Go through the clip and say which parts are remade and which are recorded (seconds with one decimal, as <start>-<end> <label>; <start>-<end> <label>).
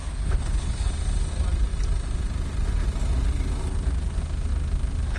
0.0-0.9 remade; 0.9-5.2 recorded